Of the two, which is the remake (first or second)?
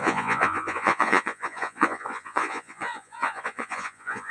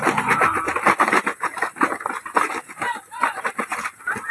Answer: first